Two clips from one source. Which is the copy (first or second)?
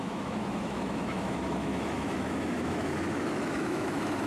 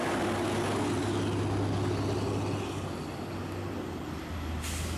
first